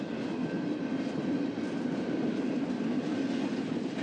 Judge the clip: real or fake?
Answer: real